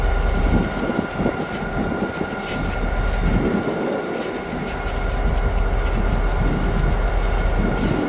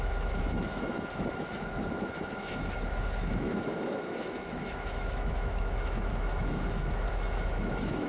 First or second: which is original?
first